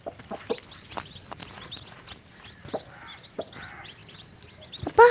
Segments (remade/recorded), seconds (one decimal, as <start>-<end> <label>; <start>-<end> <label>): 0.0-5.1 recorded